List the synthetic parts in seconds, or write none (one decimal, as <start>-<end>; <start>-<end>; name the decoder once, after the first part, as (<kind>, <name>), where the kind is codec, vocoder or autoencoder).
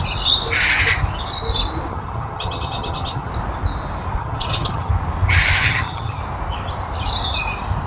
1.9-3.3 (vocoder, HiFi-GAN); 4.2-4.9; 5.6-6.2